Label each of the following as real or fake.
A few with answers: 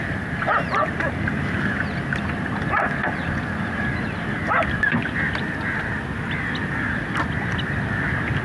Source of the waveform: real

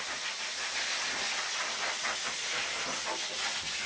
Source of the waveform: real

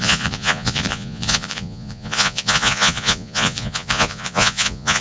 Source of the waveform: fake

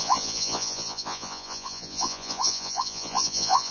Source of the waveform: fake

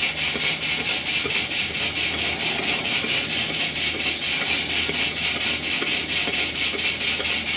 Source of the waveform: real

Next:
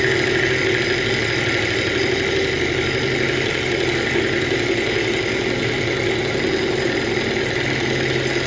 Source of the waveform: real